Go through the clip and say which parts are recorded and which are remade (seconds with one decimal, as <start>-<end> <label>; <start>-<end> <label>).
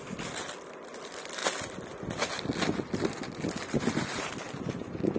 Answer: 0.0-5.2 recorded